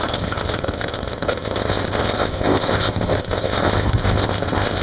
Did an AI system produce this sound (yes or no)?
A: yes